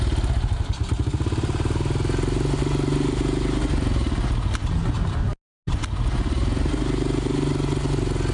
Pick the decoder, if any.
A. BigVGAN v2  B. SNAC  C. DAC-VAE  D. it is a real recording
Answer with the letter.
D